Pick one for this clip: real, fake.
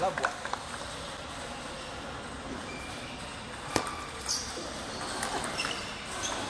real